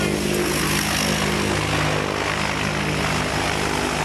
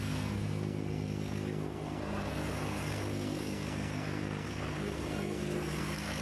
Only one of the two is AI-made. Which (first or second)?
second